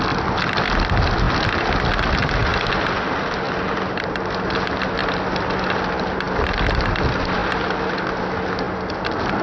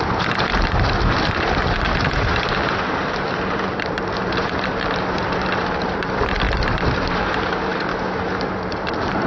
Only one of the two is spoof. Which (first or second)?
second